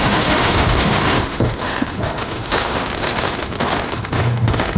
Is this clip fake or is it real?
fake